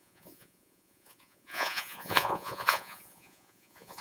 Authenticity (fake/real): fake